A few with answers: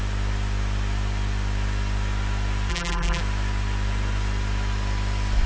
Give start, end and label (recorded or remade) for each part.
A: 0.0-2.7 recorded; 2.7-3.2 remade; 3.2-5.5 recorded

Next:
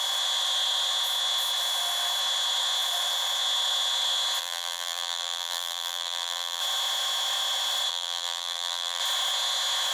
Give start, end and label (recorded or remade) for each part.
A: 0.0-4.4 recorded; 4.4-6.6 remade; 6.6-7.9 recorded; 7.9-9.0 remade; 9.0-9.9 recorded

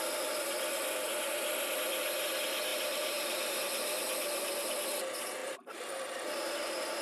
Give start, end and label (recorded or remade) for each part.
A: 0.0-2.7 recorded; 2.7-3.6 remade; 3.6-5.4 recorded; 5.4-5.9 remade; 5.9-7.0 recorded

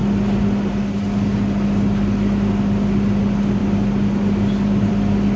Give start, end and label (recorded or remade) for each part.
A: 0.0-3.2 remade; 3.2-3.6 recorded; 3.6-4.9 remade; 4.9-5.4 recorded

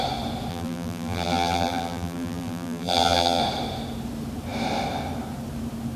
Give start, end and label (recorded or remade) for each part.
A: 0.0-0.5 recorded; 0.5-3.4 remade; 3.4-6.0 recorded

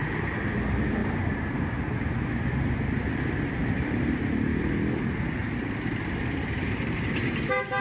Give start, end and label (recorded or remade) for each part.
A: 0.0-1.0 recorded; 1.0-2.7 remade; 2.7-3.6 recorded; 3.6-4.1 remade; 4.1-5.4 recorded; 5.4-7.2 remade; 7.2-7.8 recorded